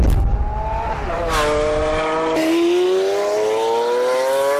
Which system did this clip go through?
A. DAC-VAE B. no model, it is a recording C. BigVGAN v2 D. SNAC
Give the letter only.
B